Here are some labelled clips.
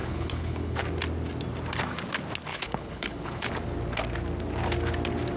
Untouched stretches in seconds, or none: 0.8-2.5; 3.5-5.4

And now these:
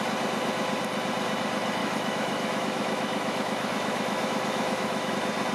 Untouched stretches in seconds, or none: 0.0-1.8; 5.1-5.5

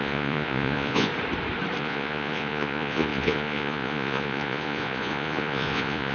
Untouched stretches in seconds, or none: 1.1-1.8

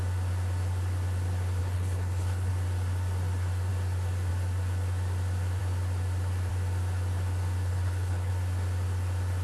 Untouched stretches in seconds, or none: 0.0-1.6; 2.5-7.7; 8.3-9.4

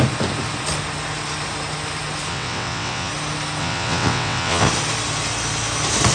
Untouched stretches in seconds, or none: 0.0-2.3; 3.1-3.6; 4.7-6.1

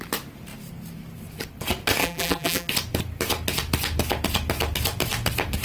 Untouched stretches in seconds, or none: 0.0-2.0; 2.7-5.6

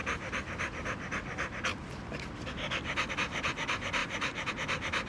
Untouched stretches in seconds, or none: 0.0-4.0; 4.5-5.1